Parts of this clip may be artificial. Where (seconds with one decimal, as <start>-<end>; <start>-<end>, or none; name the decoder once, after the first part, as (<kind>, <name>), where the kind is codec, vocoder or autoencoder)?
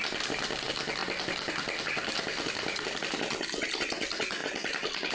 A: none